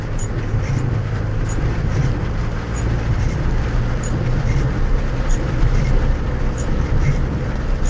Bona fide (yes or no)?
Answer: no